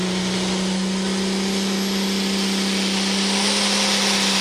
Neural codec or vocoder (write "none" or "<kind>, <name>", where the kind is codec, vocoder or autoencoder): none